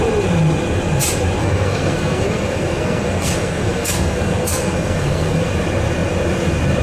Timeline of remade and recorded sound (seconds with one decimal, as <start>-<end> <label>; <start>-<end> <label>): 0.0-1.4 recorded; 1.4-5.5 remade; 5.5-6.8 recorded